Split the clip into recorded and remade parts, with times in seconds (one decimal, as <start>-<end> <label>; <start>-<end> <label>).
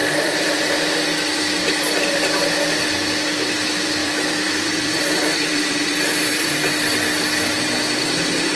0.0-0.6 remade; 0.6-4.0 recorded; 4.0-6.5 remade; 6.5-8.6 recorded